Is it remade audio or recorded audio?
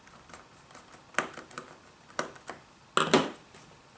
recorded